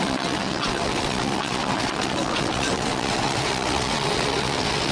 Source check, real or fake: fake